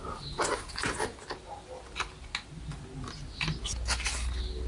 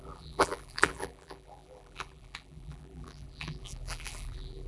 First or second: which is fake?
second